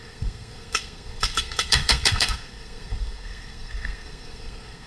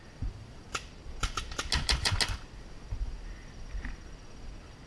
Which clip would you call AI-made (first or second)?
first